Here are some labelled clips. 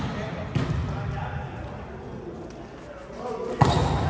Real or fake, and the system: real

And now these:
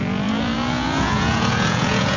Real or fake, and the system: fake, vocoder, Vocos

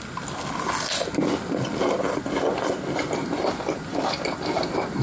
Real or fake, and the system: real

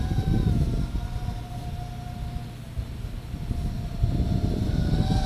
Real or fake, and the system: real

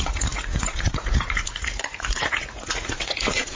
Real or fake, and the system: fake, vocoder, Vocos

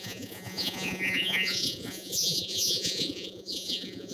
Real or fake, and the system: fake, vocoder, Vocos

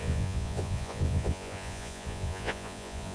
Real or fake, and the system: fake, vocoder, Vocos